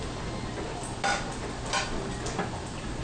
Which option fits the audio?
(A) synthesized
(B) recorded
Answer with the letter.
B